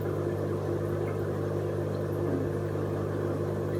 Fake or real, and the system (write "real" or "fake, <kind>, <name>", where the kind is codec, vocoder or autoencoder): real